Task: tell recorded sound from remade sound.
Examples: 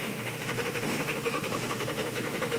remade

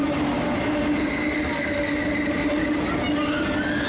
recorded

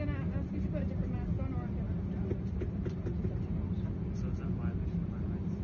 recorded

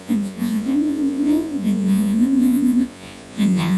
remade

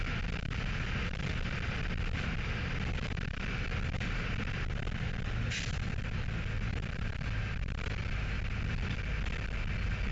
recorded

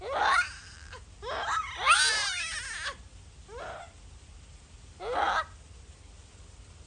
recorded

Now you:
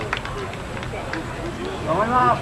recorded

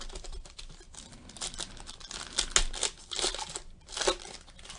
recorded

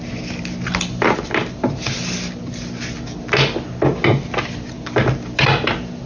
recorded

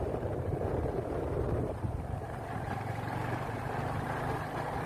remade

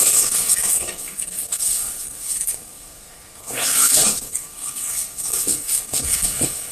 remade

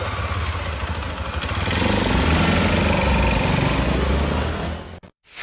recorded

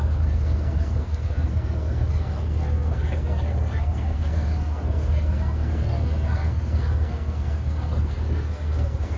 remade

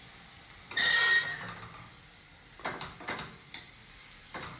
recorded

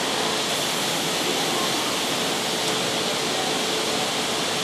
recorded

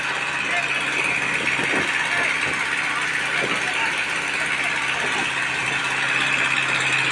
recorded